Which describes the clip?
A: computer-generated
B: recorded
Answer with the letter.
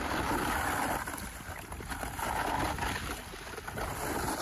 B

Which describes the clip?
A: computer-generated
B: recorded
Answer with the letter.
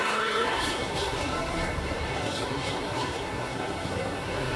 A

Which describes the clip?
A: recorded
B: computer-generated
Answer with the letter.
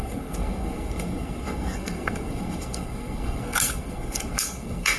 B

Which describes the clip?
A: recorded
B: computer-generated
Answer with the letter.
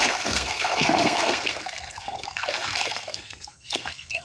B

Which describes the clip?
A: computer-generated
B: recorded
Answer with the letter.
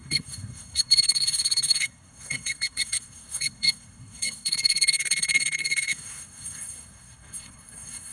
A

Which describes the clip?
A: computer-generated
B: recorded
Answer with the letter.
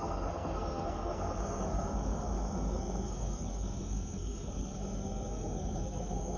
A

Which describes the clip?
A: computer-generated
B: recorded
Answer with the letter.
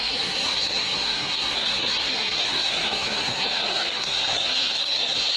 A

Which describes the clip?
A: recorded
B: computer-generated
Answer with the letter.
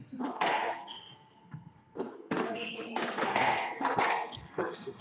B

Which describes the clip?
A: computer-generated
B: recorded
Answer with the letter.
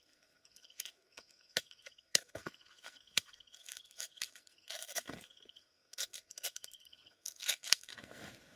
A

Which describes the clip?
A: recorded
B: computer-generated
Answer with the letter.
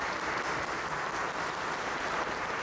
A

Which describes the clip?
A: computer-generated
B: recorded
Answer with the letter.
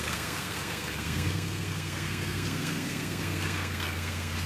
A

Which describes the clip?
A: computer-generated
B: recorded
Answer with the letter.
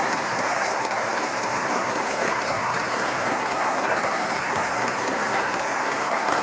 A